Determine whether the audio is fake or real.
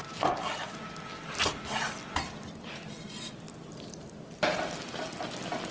real